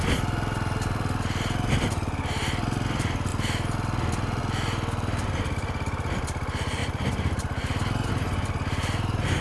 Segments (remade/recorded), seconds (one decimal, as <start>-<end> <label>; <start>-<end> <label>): 0.0-9.4 recorded